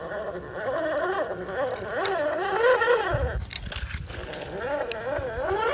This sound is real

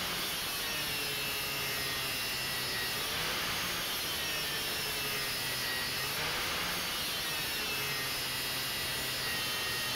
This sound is real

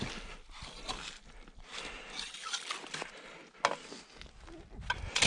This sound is real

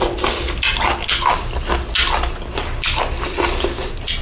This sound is real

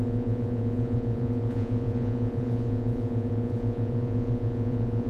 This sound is fake